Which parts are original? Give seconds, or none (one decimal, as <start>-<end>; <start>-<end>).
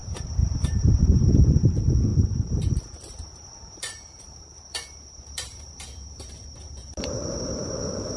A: none